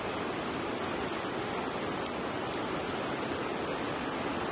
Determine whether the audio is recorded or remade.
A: recorded